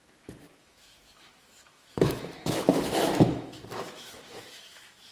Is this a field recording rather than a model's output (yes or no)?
no